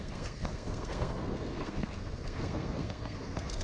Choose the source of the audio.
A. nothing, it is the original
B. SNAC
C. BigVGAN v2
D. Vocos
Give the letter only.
B